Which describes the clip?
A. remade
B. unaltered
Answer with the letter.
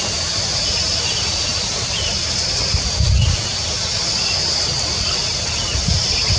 B